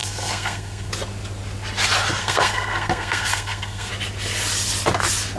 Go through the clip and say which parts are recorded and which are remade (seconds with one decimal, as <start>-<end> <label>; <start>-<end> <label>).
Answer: 0.0-0.9 remade; 0.9-2.2 recorded; 2.2-3.9 remade; 3.9-5.4 recorded